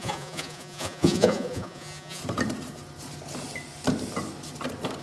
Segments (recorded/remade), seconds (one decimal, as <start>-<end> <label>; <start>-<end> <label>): 0.0-2.2 remade; 2.2-5.0 recorded